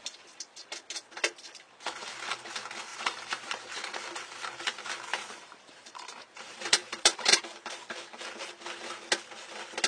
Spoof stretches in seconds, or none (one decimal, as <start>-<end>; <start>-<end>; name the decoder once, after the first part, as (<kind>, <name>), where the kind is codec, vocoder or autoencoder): 2.9-4.0 (vocoder, BigVGAN v2); 5.1-7.4